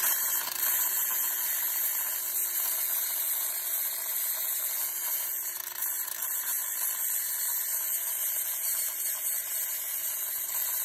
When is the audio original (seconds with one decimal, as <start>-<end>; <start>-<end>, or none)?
6.6-7.2